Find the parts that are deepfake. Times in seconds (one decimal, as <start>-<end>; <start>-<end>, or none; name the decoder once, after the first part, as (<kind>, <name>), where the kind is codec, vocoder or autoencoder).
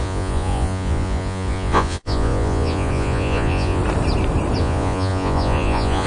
0.0-3.8 (vocoder, Vocos); 4.6-6.1